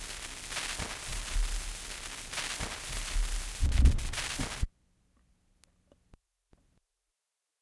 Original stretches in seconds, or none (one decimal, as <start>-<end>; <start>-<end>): 0.0-7.6